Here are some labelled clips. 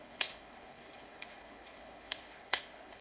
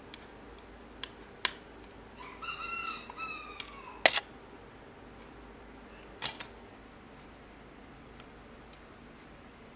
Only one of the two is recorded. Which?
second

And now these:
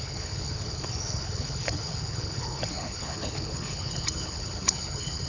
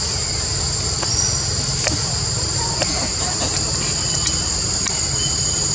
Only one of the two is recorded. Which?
second